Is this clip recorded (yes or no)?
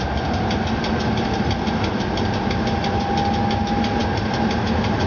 yes